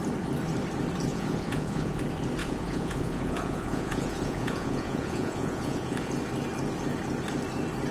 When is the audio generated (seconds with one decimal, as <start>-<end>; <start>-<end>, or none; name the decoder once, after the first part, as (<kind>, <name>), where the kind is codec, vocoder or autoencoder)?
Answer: 1.1-2.0 (vocoder, Vocos); 2.4-6.1